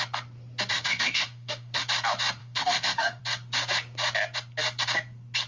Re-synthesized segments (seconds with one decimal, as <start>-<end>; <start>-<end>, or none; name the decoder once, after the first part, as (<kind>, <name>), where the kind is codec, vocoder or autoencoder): 0.7-1.8 (autoencoder, DAC-VAE); 2.4-3.2

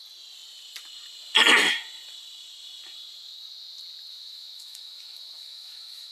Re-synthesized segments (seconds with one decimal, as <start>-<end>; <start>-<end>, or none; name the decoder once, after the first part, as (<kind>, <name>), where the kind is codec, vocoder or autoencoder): 4.1-6.1 (autoencoder, DAC-VAE)